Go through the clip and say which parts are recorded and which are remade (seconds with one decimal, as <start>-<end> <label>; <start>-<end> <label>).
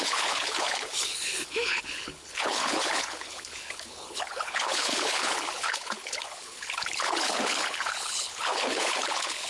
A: 0.0-9.5 remade